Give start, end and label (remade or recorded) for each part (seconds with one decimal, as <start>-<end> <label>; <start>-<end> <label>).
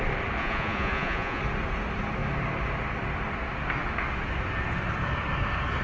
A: 0.0-0.4 recorded; 0.4-1.4 remade; 1.4-5.8 recorded